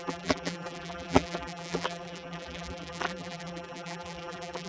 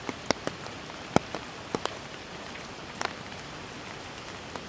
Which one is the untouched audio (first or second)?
second